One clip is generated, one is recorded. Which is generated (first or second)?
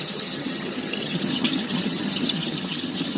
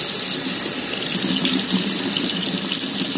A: first